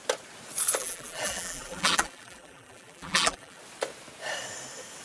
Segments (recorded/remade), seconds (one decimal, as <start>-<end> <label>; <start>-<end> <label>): 0.0-0.8 recorded; 0.8-3.6 remade; 3.6-5.0 recorded